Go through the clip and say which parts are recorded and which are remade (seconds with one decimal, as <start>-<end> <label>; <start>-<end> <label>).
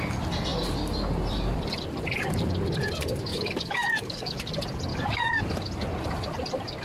0.0-3.3 recorded; 3.3-4.4 remade; 4.4-4.9 recorded; 4.9-5.4 remade; 5.4-6.8 recorded